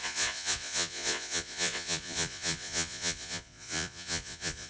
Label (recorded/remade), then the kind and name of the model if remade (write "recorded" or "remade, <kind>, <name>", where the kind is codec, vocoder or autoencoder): remade, vocoder, Vocos